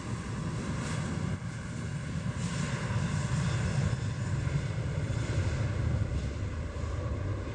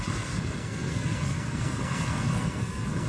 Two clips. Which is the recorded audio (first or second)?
first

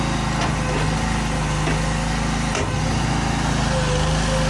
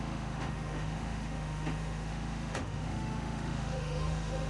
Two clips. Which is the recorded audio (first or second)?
first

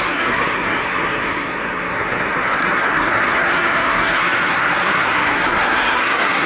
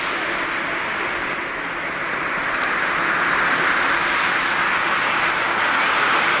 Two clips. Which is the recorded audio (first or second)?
second